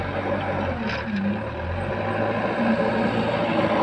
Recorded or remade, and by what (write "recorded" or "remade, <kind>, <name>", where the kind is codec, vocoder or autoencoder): recorded